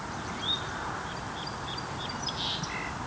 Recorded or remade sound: recorded